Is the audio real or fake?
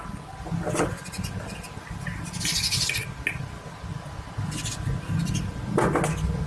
real